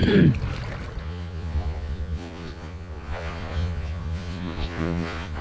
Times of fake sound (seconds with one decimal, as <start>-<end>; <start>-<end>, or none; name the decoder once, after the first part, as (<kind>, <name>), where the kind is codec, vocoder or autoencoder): 1.0-5.4 (vocoder, Vocos)

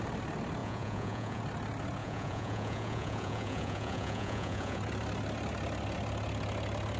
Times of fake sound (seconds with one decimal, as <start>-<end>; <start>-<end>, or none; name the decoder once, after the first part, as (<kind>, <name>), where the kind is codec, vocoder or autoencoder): 0.6-1.4 (vocoder, Vocos); 2.0-4.8

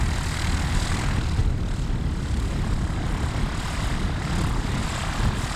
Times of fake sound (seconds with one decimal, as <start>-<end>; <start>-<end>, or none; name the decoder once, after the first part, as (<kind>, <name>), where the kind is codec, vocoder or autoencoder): none

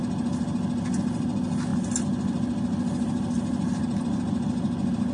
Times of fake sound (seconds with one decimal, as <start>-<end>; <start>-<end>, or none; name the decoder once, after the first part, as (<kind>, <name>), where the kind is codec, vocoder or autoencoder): none

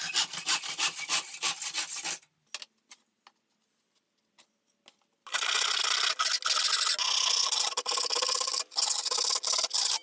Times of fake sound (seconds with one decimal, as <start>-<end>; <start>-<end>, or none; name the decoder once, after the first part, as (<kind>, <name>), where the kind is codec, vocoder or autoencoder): none